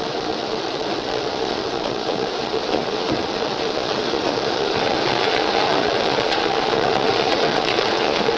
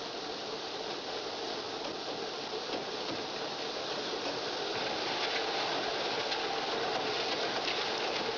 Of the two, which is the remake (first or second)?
first